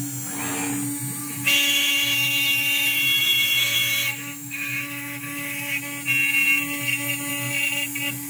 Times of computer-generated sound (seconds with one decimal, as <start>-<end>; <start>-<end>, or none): 1.2-5.8